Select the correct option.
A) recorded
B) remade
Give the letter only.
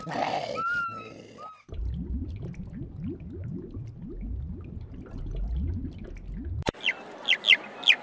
A